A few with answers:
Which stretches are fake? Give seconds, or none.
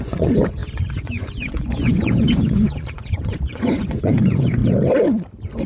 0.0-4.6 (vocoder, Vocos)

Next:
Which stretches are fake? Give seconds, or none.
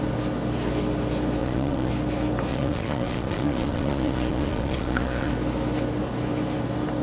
1.4-1.9 (vocoder, Vocos); 2.5-5.3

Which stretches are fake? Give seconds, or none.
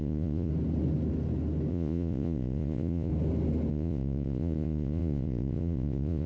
0.0-0.5 (vocoder, Vocos); 1.7-3.1; 3.7-6.3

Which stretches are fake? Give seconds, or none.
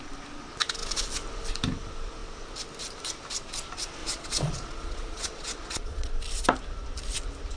4.0-6.1 (vocoder, Vocos)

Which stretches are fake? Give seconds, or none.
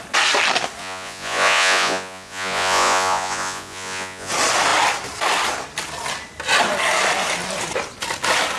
0.8-4.3 (vocoder, Vocos)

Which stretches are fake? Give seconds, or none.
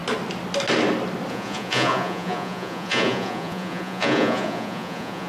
1.3-5.3 (vocoder, Vocos)